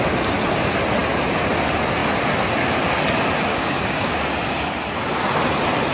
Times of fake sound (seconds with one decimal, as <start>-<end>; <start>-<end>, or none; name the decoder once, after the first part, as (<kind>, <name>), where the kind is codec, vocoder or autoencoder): 3.5-4.2 (codec, DAC)